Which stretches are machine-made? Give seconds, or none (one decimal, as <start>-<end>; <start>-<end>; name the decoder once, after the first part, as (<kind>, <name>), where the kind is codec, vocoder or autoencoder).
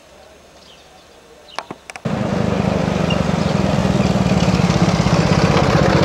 none